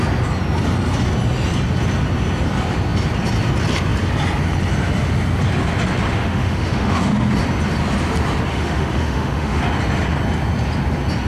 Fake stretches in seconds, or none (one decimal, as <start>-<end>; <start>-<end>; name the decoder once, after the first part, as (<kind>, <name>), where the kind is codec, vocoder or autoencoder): 6.1-7.3 (autoencoder, DAC-VAE); 8.5-9.6